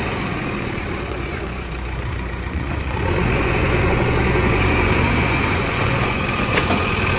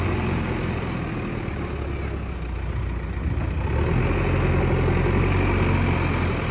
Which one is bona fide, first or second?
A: second